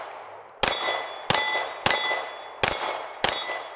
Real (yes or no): yes